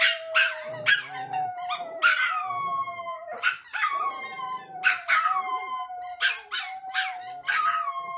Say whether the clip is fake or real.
real